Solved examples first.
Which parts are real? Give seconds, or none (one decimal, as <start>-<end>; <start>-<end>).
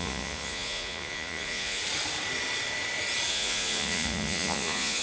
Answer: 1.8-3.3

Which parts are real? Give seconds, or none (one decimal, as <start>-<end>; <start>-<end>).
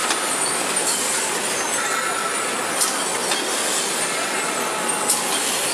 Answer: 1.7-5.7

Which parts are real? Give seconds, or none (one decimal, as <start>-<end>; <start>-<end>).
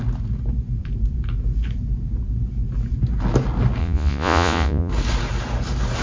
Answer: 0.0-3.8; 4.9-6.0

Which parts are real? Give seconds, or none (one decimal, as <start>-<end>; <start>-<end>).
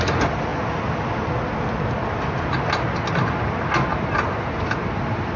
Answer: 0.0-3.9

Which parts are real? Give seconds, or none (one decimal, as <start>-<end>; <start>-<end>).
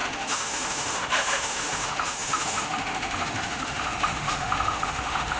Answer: none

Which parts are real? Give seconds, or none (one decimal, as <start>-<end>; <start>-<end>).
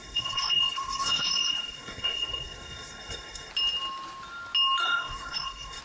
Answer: 3.5-4.8